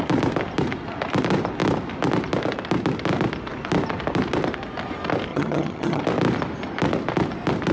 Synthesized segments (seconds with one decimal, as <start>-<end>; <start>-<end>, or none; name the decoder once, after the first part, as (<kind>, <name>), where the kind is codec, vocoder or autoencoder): 5.3-6.0 (vocoder, HiFi-GAN)